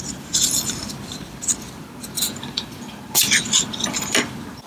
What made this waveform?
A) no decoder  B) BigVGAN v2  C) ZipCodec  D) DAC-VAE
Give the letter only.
A